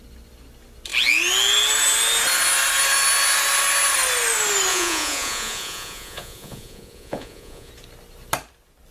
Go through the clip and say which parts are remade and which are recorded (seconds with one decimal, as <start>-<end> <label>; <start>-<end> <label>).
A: 0.0-4.7 recorded; 4.7-7.7 remade; 7.7-8.9 recorded